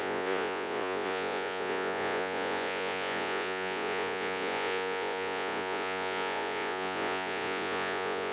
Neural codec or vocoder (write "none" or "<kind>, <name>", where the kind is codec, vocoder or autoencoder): vocoder, Vocos